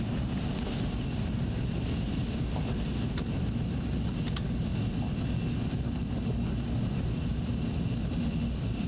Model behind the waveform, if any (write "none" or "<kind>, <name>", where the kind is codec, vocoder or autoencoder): none